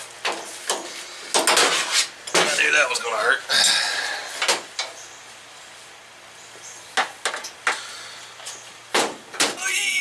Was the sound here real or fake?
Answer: real